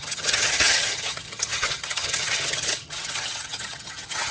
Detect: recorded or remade remade